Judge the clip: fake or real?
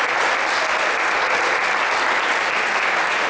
real